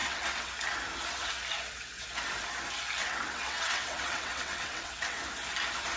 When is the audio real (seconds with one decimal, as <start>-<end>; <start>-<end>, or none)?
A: 0.5-3.0; 5.2-6.0